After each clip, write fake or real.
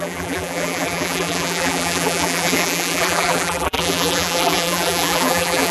fake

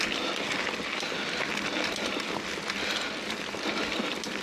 real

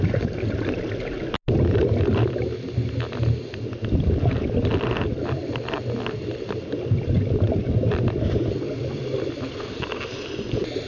real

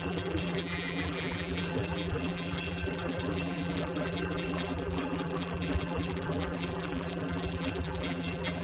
fake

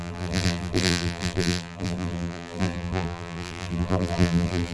fake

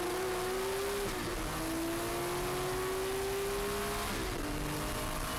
real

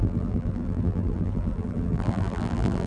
fake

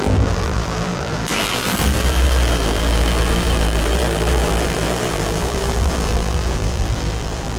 fake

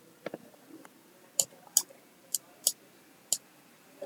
fake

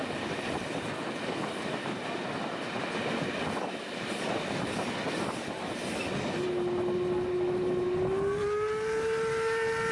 real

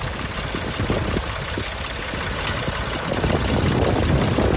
real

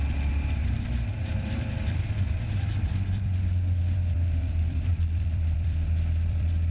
fake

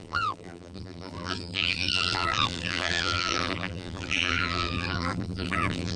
fake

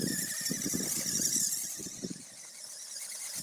real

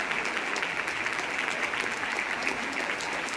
fake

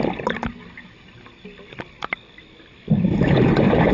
real